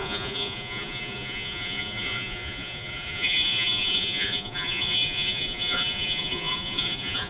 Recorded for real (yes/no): no